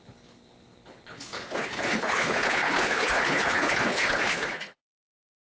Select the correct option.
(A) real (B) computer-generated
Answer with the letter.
B